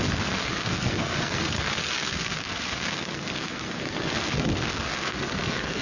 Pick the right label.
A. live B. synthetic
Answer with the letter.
B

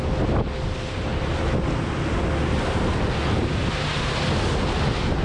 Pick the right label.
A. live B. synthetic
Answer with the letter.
A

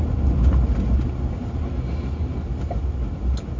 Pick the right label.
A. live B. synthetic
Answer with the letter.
A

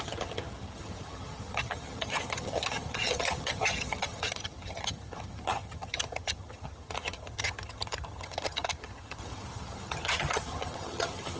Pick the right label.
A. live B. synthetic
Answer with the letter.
B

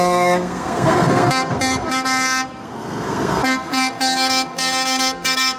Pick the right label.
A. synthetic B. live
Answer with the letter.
A